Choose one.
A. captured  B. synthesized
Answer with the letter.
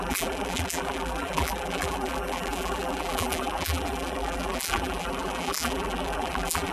B